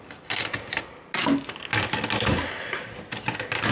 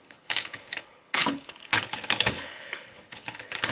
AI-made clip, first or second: second